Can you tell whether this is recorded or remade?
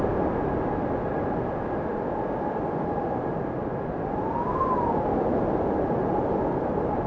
recorded